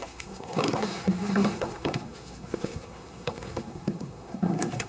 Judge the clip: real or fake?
fake